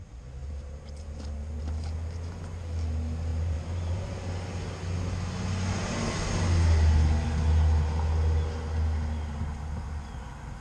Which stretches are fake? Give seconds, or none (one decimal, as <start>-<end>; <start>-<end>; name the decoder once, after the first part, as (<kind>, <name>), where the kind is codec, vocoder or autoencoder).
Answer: 0.4-1.6 (vocoder, BigVGAN v2); 3.3-4.1